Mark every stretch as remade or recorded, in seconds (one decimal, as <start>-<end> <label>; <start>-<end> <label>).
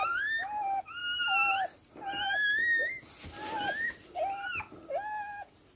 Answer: 0.0-5.8 recorded